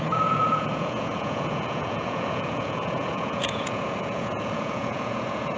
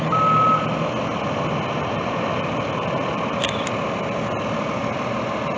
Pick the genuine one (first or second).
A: second